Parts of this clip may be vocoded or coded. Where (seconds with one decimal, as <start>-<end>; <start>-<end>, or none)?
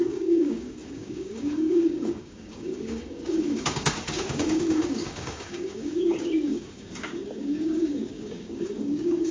0.0-9.3